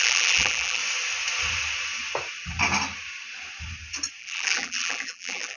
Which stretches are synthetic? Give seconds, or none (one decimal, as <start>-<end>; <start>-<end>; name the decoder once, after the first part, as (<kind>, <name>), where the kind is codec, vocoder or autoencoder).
0.0-0.8 (vocoder, BigVGAN v2); 4.2-5.6